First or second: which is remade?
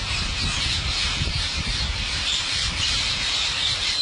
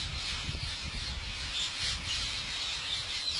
first